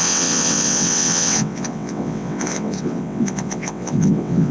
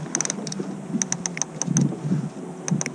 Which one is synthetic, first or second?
first